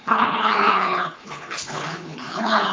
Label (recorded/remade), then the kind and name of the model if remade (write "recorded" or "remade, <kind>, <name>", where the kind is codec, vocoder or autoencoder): remade, codec, HILCodec